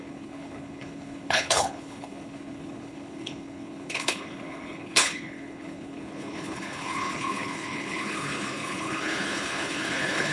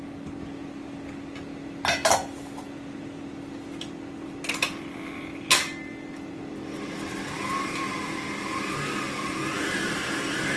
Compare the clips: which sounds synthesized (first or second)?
first